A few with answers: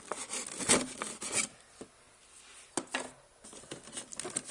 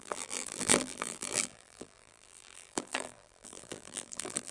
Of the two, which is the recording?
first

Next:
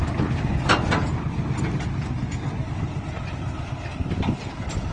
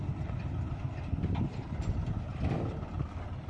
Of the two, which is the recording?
first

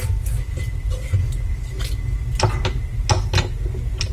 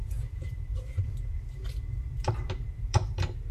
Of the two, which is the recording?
first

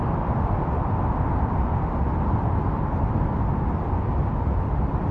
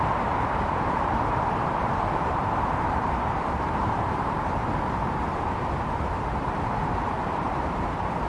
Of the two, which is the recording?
first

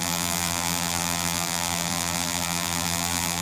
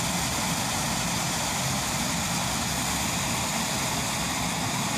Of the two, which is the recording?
second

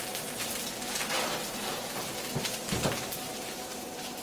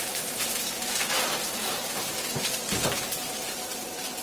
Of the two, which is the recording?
first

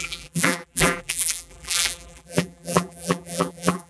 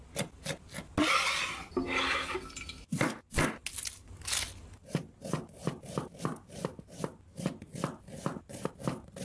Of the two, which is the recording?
second